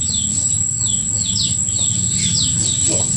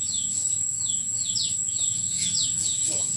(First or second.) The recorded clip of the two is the first